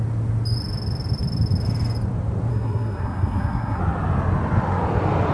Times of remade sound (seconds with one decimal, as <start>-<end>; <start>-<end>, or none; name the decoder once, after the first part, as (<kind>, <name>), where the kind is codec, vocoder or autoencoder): 2.5-3.8 (codec, SNAC)